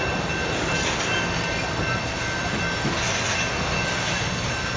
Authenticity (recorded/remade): recorded